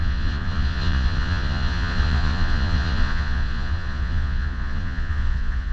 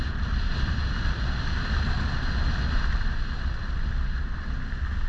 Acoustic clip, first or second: second